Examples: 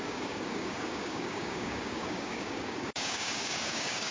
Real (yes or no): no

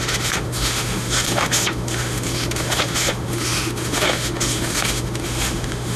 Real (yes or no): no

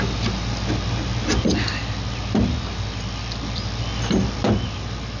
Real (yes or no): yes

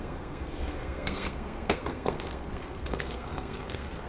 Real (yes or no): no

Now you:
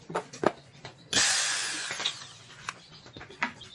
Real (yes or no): no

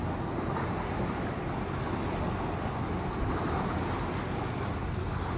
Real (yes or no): yes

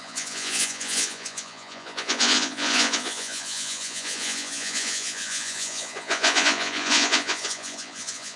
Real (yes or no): no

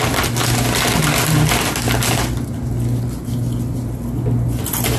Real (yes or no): yes